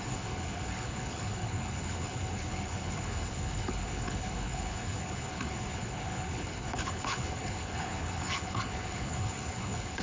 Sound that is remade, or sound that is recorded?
remade